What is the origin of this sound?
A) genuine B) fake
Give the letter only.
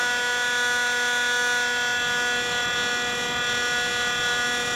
A